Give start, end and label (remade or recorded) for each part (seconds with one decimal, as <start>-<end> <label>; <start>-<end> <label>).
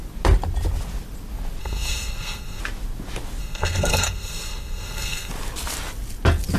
0.0-1.6 recorded; 1.6-2.6 remade; 2.6-3.4 recorded; 3.4-5.3 remade; 5.3-6.6 recorded